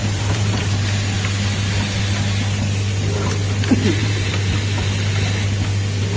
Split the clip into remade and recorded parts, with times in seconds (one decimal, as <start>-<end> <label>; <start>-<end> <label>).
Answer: 0.0-0.6 remade; 0.6-4.0 recorded; 4.0-4.5 remade; 4.5-6.2 recorded